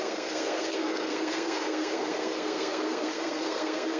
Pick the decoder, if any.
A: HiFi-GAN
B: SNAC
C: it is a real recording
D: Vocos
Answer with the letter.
B